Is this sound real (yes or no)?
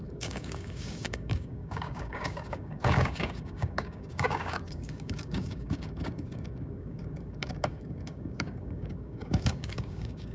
no